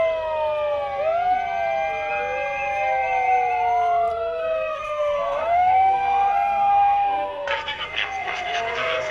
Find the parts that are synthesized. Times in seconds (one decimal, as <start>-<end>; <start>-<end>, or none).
4.1-9.1